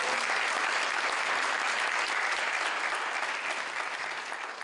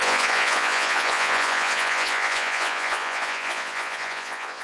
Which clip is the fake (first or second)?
second